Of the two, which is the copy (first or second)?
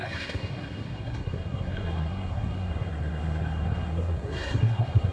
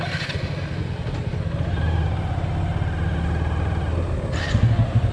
first